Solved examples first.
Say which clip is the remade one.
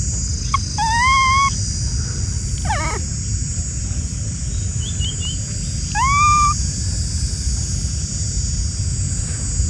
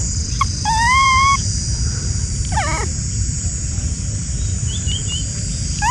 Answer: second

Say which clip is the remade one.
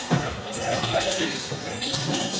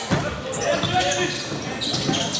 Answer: first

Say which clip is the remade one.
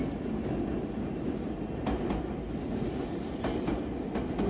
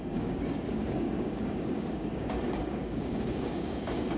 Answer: second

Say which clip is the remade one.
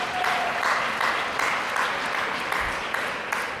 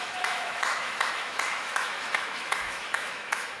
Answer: second